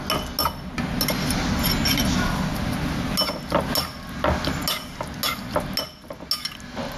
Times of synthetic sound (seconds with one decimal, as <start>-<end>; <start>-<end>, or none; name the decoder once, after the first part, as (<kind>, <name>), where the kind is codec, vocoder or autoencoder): none